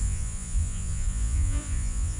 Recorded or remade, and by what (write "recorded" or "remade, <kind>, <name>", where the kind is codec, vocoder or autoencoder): remade, vocoder, Vocos